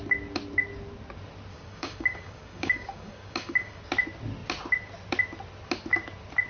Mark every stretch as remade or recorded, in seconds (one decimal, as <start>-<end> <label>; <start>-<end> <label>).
0.0-1.5 recorded; 1.5-3.8 remade; 3.8-6.5 recorded